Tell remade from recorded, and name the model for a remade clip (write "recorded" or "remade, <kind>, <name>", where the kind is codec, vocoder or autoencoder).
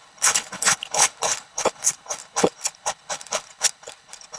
remade, codec, HILCodec